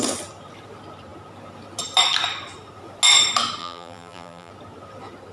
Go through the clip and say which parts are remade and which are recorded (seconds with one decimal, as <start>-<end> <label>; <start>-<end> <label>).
0.0-3.6 recorded; 3.6-4.5 remade; 4.5-5.3 recorded